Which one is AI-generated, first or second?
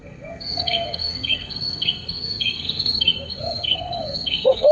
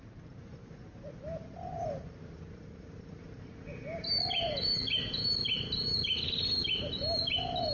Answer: first